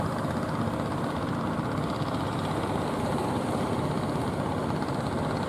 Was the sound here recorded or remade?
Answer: recorded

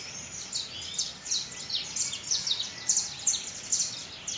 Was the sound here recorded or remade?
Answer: recorded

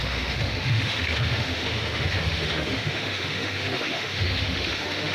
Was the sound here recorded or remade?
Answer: remade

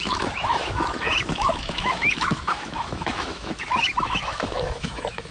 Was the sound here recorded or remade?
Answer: remade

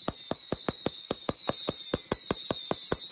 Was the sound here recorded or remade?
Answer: recorded